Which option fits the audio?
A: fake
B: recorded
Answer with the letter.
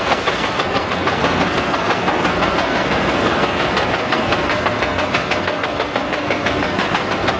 A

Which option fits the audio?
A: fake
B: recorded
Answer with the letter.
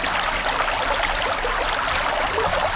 B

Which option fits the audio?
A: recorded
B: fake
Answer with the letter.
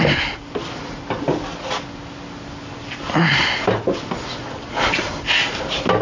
A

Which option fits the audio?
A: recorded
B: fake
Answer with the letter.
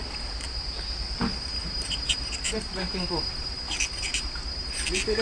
B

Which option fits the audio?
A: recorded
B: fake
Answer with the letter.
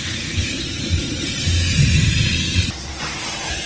B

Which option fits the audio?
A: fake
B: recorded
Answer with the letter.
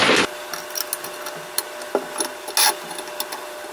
B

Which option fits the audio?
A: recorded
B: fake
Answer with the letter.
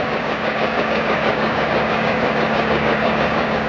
B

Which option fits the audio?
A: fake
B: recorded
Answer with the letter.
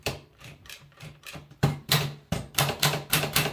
A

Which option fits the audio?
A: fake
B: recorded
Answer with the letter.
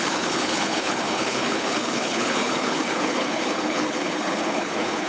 A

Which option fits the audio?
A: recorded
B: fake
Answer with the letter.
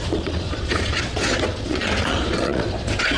B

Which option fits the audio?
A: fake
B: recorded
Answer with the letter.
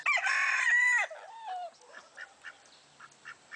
B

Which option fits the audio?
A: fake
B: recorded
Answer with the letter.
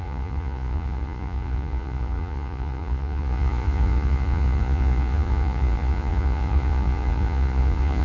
A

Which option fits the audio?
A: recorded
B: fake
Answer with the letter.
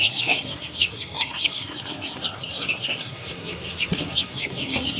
B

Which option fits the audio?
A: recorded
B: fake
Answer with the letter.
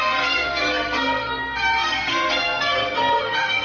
B